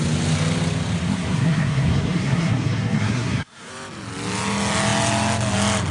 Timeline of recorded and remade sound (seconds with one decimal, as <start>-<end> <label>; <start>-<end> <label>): 0.0-1.1 recorded; 1.1-3.7 remade; 3.7-5.9 recorded